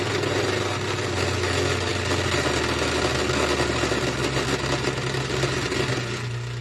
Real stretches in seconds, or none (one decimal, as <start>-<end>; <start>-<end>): 0.0-6.6

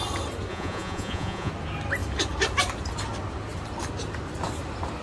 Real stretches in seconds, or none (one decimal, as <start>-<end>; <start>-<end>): 0.0-0.5; 1.5-5.0

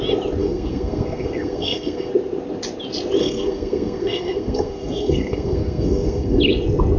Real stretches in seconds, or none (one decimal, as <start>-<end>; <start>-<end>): 0.0-0.4; 2.1-3.2; 6.4-7.0

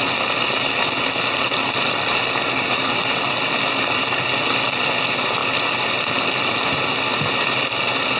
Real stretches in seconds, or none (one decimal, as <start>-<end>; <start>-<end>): 0.0-8.2

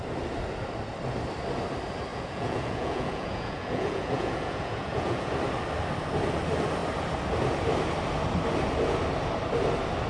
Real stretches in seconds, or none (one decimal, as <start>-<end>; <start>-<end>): 0.0-2.1; 5.3-10.1